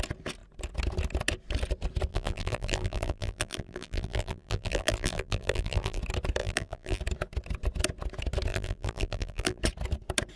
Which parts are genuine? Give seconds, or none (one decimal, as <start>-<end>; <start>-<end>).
0.0-2.1; 6.0-6.4; 7.0-8.5; 9.6-10.4